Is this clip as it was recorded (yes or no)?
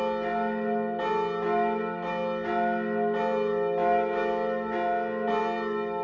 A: yes